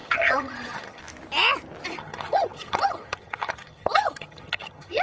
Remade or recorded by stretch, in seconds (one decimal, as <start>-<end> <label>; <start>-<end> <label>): 0.0-1.0 remade; 1.0-1.9 recorded; 1.9-5.0 remade